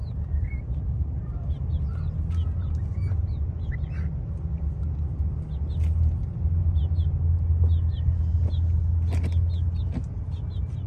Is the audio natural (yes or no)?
yes